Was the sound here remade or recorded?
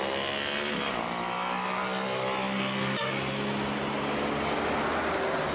recorded